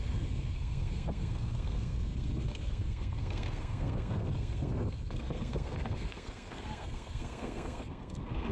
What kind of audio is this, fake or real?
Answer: fake